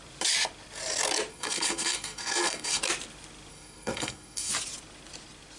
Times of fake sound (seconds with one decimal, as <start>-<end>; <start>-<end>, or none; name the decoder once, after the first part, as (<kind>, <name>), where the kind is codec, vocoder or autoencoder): 1.3-2.8 (codec, SNAC); 3.5-4.5